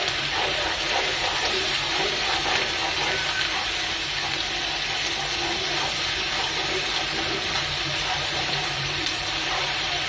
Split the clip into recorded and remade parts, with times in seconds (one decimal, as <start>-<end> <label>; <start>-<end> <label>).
0.0-2.8 remade; 2.8-5.6 recorded; 5.6-10.1 remade